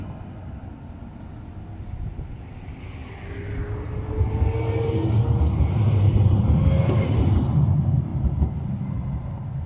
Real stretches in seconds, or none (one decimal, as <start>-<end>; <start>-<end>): 0.0-9.7